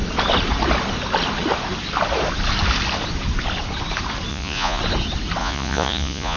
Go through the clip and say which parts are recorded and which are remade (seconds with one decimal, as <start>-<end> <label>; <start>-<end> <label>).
0.0-4.3 recorded; 4.3-4.8 remade; 4.8-5.4 recorded; 5.4-6.4 remade